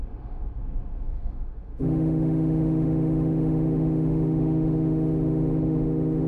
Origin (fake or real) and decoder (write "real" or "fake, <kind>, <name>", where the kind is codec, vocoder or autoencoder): fake, autoencoder, DAC-VAE